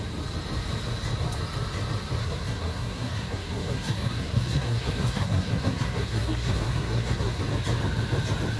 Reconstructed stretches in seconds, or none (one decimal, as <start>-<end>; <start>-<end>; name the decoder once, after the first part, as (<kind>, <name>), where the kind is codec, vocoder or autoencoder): 2.2-7.4 (codec, SNAC)